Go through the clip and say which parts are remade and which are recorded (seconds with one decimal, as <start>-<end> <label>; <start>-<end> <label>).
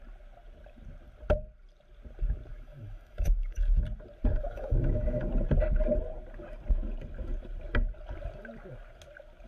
0.0-2.5 recorded; 2.5-3.8 remade; 3.8-4.3 recorded; 4.3-5.3 remade; 5.3-9.5 recorded